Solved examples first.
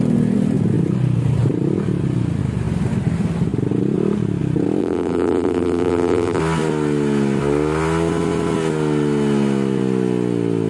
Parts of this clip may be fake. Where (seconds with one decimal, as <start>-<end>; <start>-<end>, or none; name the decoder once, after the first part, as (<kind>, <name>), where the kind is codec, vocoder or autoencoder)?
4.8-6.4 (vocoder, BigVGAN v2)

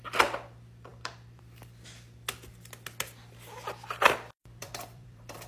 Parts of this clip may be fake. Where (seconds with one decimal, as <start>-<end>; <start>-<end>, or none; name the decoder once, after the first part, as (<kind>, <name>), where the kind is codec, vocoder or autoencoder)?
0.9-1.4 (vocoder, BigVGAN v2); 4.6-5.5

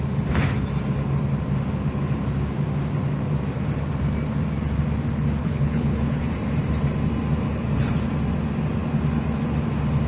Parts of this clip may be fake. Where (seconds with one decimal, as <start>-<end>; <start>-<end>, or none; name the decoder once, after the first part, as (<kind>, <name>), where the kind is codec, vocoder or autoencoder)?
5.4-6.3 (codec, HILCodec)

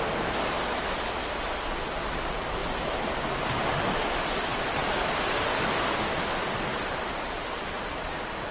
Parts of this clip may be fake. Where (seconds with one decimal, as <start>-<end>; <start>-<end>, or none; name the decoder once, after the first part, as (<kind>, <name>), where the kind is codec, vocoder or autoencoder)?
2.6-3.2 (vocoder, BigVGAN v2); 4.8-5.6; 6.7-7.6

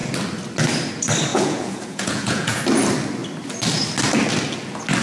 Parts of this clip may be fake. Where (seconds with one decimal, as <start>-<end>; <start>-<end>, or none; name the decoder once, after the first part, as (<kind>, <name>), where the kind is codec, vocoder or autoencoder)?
1.3-2.6 (vocoder, Vocos)

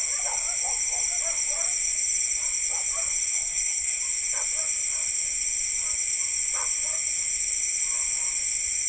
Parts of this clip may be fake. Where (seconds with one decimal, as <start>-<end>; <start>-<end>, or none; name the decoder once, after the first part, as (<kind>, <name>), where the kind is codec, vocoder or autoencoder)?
3.3-4.0 (codec, SNAC)

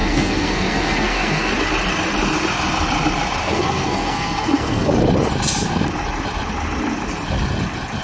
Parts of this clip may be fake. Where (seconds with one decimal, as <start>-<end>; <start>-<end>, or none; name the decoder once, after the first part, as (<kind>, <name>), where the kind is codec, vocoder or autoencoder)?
0.0-1.5 (codec, SNAC); 3.4-4.9

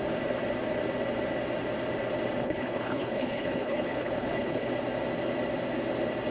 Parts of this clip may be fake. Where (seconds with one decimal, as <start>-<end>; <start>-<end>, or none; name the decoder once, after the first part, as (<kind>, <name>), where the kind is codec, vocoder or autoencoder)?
2.4-4.7 (codec, HILCodec)